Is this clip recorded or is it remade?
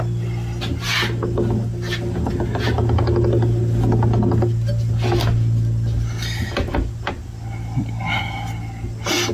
recorded